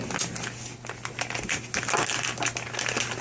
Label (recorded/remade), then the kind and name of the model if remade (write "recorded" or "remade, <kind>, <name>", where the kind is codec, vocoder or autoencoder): recorded